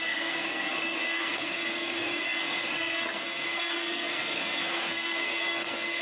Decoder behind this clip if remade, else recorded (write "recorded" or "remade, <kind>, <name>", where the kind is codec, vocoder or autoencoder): remade, codec, SNAC